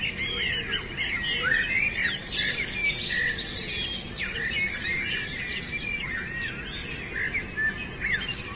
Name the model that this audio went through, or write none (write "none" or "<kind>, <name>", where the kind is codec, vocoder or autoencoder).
none